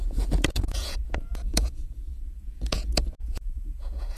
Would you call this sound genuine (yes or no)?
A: no